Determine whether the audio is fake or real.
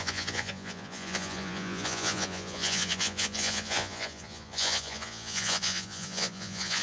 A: fake